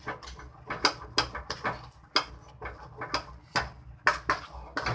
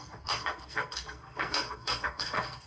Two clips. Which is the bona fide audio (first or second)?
first